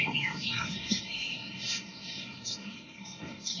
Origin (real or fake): fake